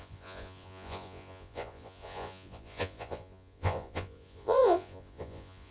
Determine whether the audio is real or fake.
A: fake